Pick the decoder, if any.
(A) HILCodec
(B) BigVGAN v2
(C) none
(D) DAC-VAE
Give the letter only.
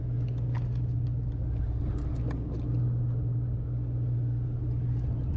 C